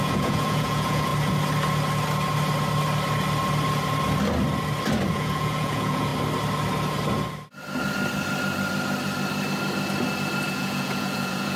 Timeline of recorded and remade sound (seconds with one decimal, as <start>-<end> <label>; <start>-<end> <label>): 0.0-1.1 remade; 1.1-5.1 recorded; 5.1-6.1 remade; 6.1-10.5 recorded; 10.5-11.6 remade